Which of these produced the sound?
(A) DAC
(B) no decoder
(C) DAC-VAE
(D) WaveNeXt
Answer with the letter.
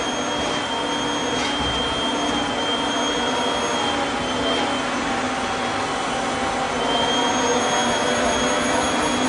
B